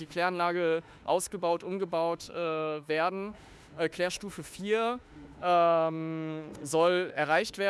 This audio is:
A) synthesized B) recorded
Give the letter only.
A